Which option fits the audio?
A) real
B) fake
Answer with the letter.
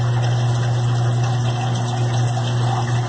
A